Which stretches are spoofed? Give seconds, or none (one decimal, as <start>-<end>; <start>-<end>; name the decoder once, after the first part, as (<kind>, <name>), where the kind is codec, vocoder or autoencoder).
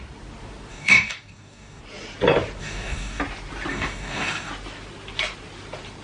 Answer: 0.7-1.8 (codec, DAC); 2.6-3.2; 3.7-4.5